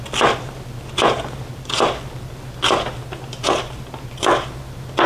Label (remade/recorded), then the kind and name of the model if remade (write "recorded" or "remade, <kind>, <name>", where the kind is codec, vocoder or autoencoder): recorded